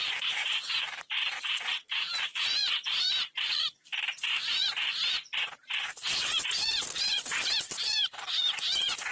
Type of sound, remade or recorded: remade